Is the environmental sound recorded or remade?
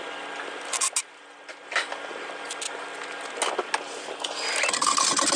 recorded